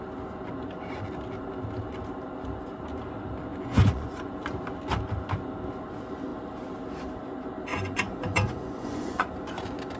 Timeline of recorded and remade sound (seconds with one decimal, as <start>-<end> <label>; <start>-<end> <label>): 0.0-3.5 recorded; 3.5-4.3 remade; 4.3-7.7 recorded; 7.7-9.3 remade; 9.3-10.0 recorded